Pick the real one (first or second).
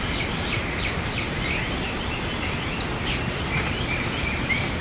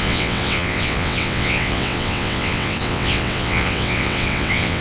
first